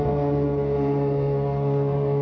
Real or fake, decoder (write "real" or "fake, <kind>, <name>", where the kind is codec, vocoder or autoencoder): fake, codec, SNAC